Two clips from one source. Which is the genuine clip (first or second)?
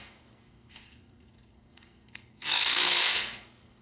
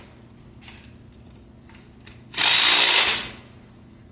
second